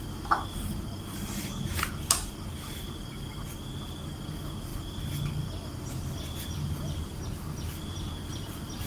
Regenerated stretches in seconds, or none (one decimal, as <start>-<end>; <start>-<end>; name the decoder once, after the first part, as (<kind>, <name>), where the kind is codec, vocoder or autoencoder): 0.0-8.9 (vocoder, BigVGAN v2)